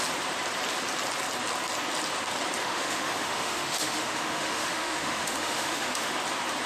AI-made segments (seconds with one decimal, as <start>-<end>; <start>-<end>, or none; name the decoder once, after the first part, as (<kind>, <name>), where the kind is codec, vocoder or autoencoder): 2.6-6.1 (autoencoder, DAC-VAE)